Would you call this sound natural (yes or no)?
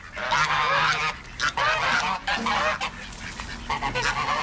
yes